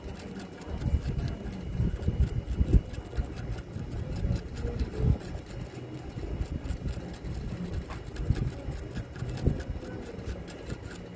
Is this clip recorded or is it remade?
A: recorded